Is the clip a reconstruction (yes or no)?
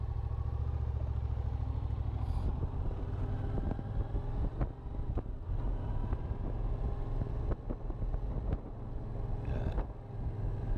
no